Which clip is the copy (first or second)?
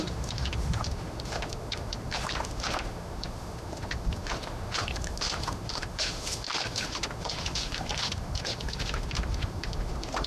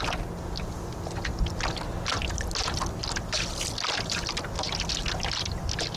first